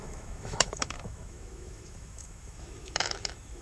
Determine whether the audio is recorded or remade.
remade